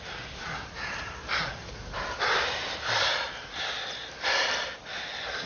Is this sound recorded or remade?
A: recorded